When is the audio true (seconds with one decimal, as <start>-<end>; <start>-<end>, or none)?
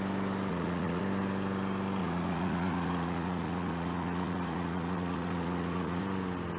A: 0.0-0.5; 1.0-2.0; 6.0-6.6